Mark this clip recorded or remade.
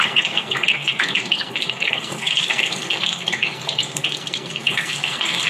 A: remade